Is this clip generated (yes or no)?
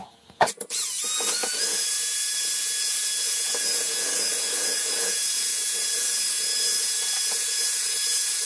yes